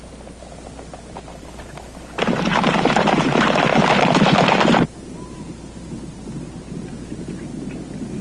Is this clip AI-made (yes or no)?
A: no